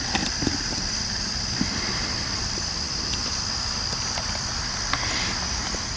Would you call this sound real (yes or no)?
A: yes